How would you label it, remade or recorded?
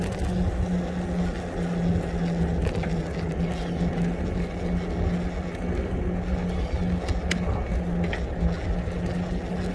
recorded